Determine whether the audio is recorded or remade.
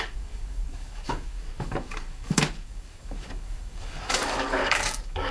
remade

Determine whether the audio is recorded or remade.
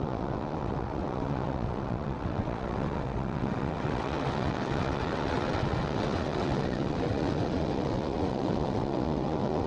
remade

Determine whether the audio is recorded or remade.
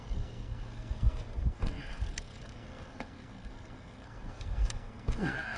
remade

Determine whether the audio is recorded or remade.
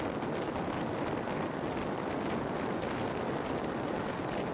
recorded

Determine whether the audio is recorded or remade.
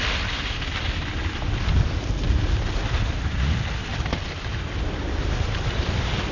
recorded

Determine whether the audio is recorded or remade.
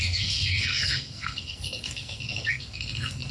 remade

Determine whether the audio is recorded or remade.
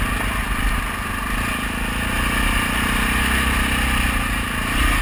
recorded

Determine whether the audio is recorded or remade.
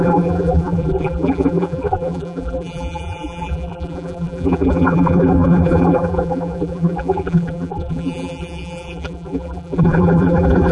remade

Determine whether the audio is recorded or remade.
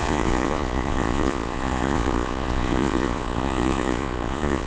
remade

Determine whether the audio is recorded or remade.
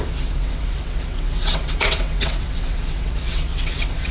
remade